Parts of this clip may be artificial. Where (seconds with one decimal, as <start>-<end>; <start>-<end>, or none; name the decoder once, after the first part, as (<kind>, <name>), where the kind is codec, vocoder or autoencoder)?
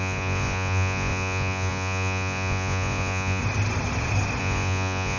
0.0-3.4 (vocoder, Vocos); 4.4-5.2